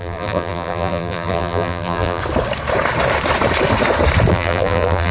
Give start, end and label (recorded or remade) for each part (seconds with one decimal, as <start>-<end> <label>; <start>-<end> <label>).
0.0-2.2 remade; 2.2-4.3 recorded; 4.3-5.1 remade